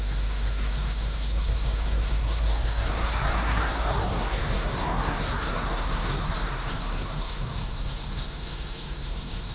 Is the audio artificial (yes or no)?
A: yes